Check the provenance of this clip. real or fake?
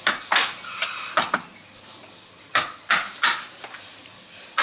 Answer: real